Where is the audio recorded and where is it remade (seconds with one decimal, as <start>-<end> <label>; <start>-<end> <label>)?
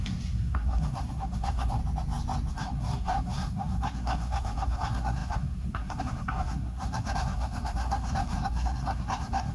0.0-1.8 remade; 1.8-2.5 recorded; 2.5-9.5 remade